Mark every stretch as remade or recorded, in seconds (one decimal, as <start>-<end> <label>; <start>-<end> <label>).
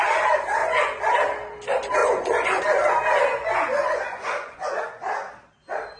0.0-0.6 recorded; 0.6-1.1 remade; 1.1-2.0 recorded; 2.0-2.6 remade; 2.6-3.3 recorded; 3.3-4.8 remade; 4.8-6.0 recorded